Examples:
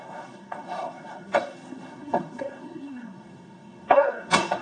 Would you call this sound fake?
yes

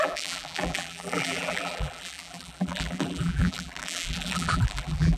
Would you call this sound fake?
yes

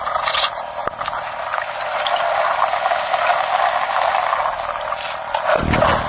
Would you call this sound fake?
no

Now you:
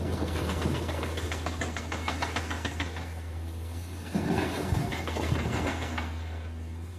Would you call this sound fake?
yes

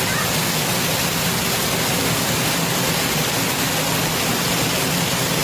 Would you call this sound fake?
no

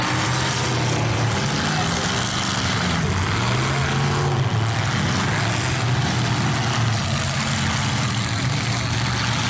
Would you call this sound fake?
no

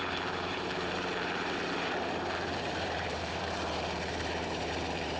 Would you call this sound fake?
yes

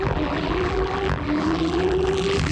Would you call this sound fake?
yes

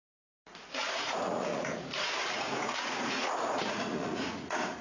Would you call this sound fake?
yes